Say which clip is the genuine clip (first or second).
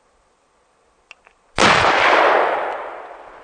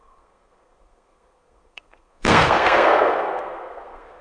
first